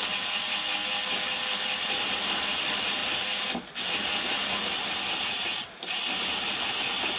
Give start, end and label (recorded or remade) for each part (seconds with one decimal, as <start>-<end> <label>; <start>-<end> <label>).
0.0-7.2 recorded